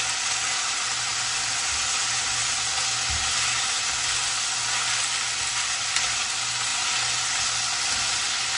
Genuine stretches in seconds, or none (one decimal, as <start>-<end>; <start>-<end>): 0.0-8.6